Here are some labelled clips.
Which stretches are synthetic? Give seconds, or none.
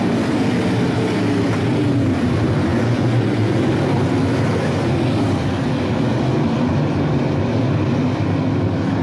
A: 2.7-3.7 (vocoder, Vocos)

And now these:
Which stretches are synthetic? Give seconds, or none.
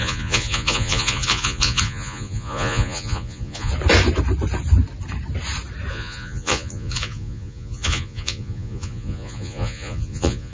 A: 0.0-3.7 (vocoder, Vocos); 5.9-10.5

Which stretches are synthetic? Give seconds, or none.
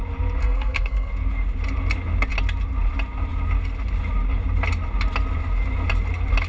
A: 0.4-1.1 (codec, SNAC)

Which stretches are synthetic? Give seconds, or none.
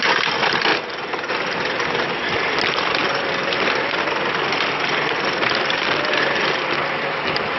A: none